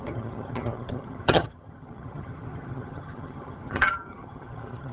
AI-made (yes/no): yes